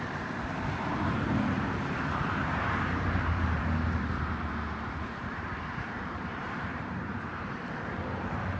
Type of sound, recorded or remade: remade